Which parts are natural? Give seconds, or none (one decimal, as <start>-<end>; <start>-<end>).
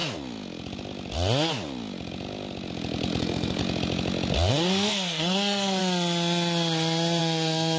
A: 0.0-3.2; 3.6-4.5; 5.8-7.2